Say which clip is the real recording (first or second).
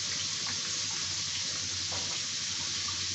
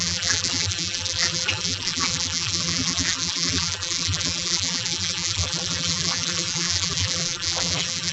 first